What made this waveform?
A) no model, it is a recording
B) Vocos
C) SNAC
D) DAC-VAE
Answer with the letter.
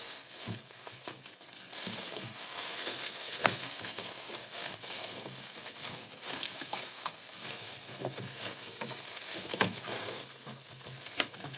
C